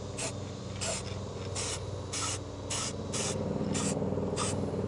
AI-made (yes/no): no